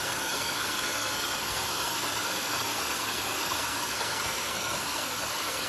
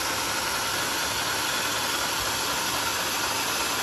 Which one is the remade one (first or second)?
first